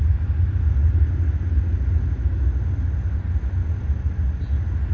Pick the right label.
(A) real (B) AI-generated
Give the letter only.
A